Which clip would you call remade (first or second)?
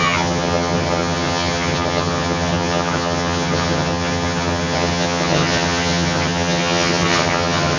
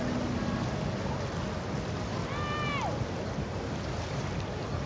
first